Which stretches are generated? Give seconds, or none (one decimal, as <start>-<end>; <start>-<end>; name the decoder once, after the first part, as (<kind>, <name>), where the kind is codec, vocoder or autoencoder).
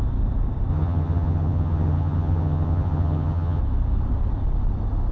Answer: 0.7-3.6 (vocoder, HiFi-GAN)